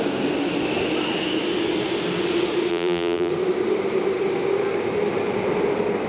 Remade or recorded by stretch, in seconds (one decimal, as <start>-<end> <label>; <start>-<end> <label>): 0.0-2.7 recorded; 2.7-3.3 remade; 3.3-6.1 recorded

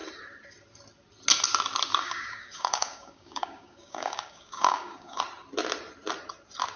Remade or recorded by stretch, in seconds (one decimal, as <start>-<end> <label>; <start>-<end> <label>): 0.0-1.9 recorded; 1.9-5.2 remade; 5.2-6.8 recorded

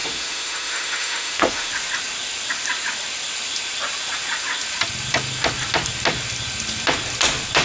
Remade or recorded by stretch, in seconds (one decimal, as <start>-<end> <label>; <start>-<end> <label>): 0.0-1.7 remade; 1.7-7.6 recorded

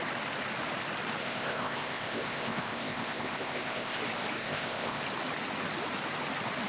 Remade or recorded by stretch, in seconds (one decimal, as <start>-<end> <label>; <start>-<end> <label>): 0.0-1.2 recorded; 1.2-4.0 remade; 4.0-4.4 recorded; 4.4-5.0 remade; 5.0-6.7 recorded

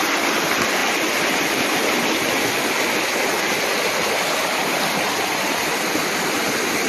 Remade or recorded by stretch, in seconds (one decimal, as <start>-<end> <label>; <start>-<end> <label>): 0.0-6.9 recorded

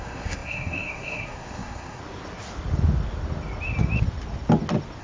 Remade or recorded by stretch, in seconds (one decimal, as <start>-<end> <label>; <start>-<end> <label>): 0.0-2.0 remade; 2.0-5.0 recorded

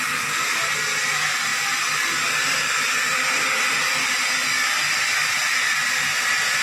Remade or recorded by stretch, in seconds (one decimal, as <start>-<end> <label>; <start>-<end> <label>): 0.0-6.6 recorded